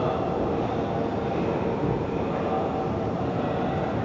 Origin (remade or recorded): recorded